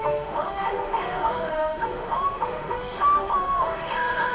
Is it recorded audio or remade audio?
remade